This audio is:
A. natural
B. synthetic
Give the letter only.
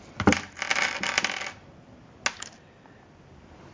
A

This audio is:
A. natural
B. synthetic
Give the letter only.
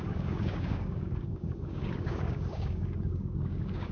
B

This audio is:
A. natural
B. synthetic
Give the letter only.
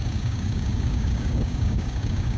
B